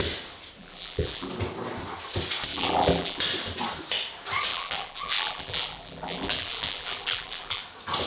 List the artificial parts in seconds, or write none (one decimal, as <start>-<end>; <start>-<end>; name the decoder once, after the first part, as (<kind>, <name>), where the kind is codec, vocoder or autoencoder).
0.6-1.3 (vocoder, BigVGAN v2); 2.5-3.2; 4.5-7.6